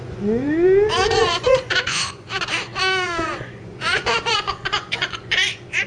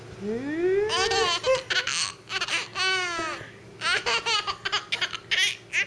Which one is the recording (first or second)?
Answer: second